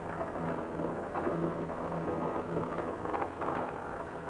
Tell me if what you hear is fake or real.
fake